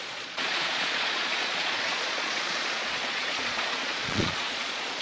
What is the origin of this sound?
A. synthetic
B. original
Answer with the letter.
A